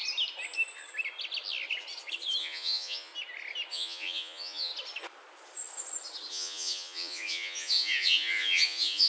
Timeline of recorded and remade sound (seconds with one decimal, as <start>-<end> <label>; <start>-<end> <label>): 0.0-2.4 recorded; 2.4-3.1 remade; 3.1-3.7 recorded; 3.7-4.7 remade; 4.7-6.3 recorded; 6.3-9.1 remade